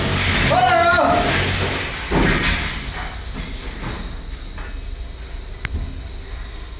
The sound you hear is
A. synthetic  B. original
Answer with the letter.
B